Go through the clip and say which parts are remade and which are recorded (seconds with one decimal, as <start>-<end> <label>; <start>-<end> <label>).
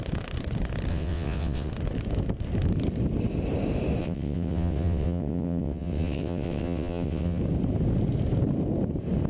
0.0-0.9 recorded; 0.9-1.7 remade; 1.7-4.0 recorded; 4.0-7.4 remade; 7.4-9.3 recorded